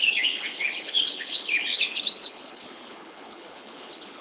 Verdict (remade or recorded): remade